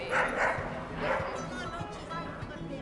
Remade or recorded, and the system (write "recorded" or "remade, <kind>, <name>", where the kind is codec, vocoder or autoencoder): recorded